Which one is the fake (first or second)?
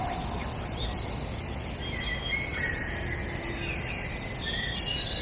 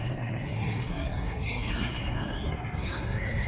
second